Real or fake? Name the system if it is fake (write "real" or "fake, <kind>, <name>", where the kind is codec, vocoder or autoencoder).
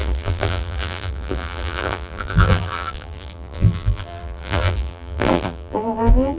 fake, vocoder, BigVGAN v2